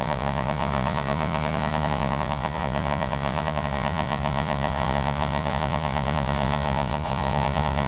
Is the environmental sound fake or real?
fake